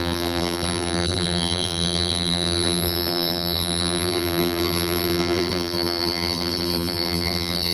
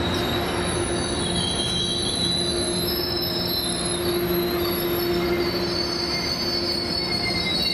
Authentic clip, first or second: second